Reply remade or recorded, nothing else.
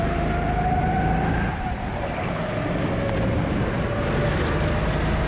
recorded